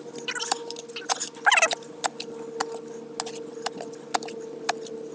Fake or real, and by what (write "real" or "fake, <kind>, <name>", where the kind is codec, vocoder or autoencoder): real